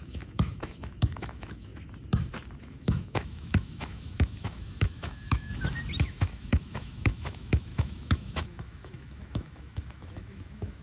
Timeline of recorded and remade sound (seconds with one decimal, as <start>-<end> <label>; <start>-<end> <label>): 0.0-1.7 remade; 1.7-2.6 recorded; 2.6-5.5 remade; 5.5-6.0 recorded; 6.0-10.8 remade